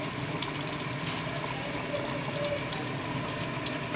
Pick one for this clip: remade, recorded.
recorded